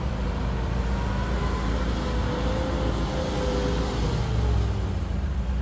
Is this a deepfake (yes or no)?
no